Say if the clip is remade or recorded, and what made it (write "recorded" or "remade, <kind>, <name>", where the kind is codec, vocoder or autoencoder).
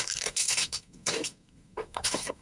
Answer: remade, codec, SNAC